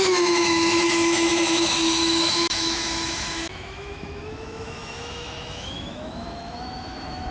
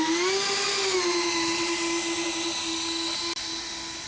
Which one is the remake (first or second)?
first